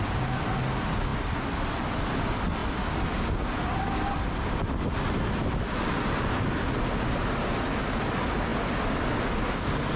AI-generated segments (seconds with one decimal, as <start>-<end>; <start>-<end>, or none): none